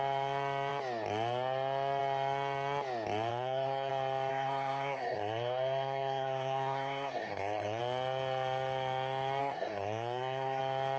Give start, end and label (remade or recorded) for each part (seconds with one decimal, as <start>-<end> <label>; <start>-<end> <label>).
0.0-3.3 recorded; 3.3-3.9 remade; 3.9-4.3 recorded; 4.3-7.8 remade; 7.8-9.4 recorded; 9.4-10.6 remade; 10.6-11.0 recorded